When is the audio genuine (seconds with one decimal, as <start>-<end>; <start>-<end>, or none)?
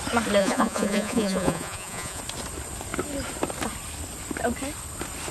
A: 0.0-0.4; 2.2-5.3